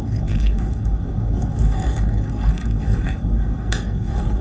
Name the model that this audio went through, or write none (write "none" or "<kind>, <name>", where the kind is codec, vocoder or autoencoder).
codec, SNAC